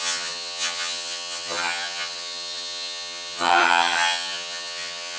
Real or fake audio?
fake